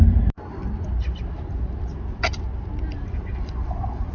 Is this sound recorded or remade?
recorded